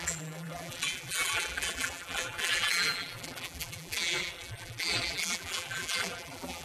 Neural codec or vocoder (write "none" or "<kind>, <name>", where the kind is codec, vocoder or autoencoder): vocoder, BigVGAN v2